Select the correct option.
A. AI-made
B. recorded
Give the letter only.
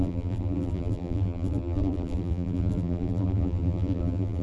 A